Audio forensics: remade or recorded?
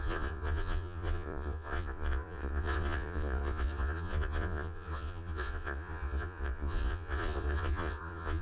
remade